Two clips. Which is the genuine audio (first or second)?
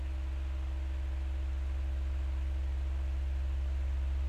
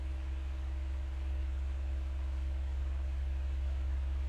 first